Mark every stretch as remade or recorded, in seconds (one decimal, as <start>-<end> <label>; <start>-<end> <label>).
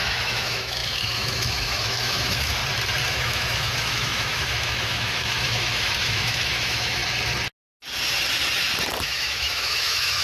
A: 0.0-2.6 remade; 2.6-3.1 recorded; 3.1-7.0 remade; 7.0-9.0 recorded; 9.0-10.2 remade